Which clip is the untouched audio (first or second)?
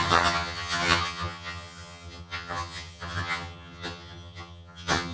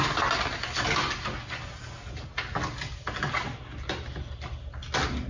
second